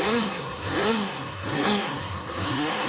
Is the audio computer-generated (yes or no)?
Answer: yes